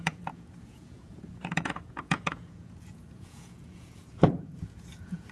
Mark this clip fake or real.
fake